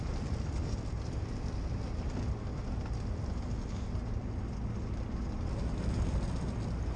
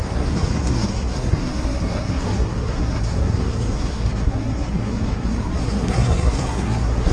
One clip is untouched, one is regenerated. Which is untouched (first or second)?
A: first